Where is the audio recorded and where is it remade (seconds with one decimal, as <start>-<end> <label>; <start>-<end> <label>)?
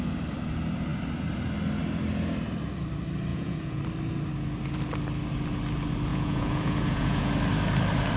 0.0-3.3 recorded; 3.3-3.8 remade; 3.8-6.1 recorded; 6.1-7.3 remade; 7.3-8.2 recorded